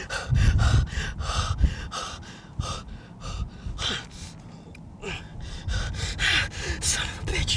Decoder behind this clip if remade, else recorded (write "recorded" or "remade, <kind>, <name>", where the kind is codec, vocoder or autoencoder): recorded